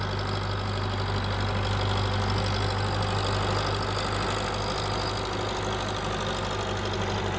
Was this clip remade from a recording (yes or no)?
no